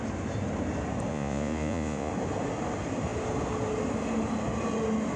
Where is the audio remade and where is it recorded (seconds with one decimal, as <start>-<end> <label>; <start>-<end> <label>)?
0.0-1.1 recorded; 1.1-2.1 remade; 2.1-5.2 recorded